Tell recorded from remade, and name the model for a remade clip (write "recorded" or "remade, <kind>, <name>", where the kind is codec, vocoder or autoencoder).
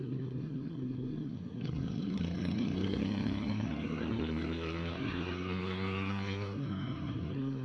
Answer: remade, codec, SNAC